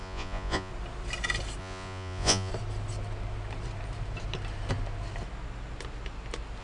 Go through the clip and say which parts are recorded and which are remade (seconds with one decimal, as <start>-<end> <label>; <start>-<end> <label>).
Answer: 0.0-0.7 remade; 0.7-1.6 recorded; 1.6-2.5 remade; 2.5-6.6 recorded

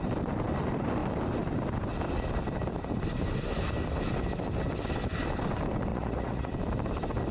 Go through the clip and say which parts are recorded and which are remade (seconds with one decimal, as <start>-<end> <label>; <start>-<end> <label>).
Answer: 0.0-5.9 recorded; 5.9-6.5 remade; 6.5-7.3 recorded

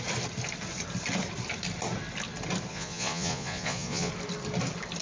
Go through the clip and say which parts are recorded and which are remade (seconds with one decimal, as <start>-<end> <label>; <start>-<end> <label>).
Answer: 0.0-2.7 recorded; 2.7-4.1 remade; 4.1-5.0 recorded

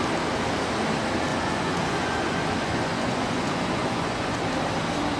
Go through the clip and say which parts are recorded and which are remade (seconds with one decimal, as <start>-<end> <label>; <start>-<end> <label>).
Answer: 0.0-1.3 recorded; 1.3-4.4 remade; 4.4-5.2 recorded

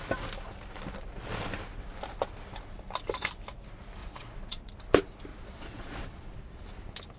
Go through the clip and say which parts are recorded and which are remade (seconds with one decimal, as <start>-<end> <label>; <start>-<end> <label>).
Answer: 0.0-4.0 recorded; 4.0-4.7 remade; 4.7-5.3 recorded; 5.3-6.6 remade; 6.6-7.2 recorded

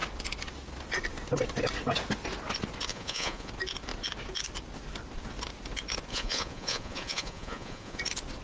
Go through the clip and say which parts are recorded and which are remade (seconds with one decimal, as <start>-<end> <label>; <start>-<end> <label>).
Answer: 0.0-2.9 recorded; 2.9-3.5 remade; 3.5-6.1 recorded; 6.1-8.0 remade; 8.0-8.4 recorded

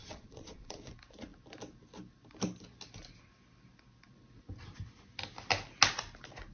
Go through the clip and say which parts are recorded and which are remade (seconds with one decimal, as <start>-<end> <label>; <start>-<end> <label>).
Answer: 0.0-0.9 remade; 0.9-6.5 recorded